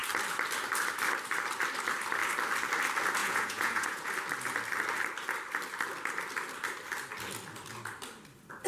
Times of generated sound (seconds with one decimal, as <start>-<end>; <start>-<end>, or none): 3.2-4.1